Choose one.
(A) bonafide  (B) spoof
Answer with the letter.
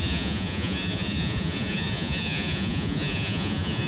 B